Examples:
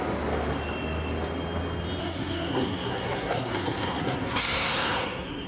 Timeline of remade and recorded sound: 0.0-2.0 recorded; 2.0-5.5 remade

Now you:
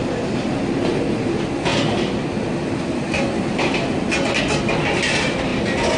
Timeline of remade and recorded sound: 0.0-6.0 recorded